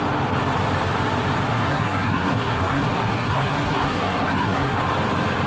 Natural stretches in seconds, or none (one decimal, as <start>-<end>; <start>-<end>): 0.0-1.5; 4.8-5.5